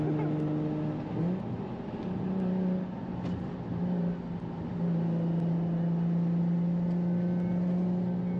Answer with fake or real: real